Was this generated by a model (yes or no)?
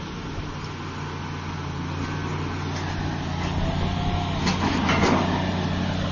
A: no